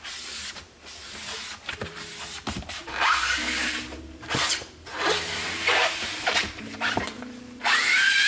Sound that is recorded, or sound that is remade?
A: remade